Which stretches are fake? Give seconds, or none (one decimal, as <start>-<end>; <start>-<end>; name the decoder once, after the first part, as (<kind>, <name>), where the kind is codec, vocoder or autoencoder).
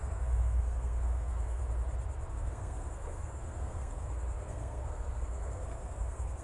0.0-1.6 (codec, SNAC); 2.3-6.4